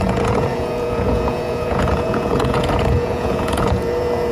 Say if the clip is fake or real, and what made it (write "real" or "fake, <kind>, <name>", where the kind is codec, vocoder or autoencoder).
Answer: fake, vocoder, Vocos